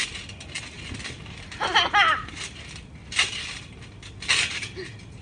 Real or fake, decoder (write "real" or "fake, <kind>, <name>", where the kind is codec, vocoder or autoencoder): real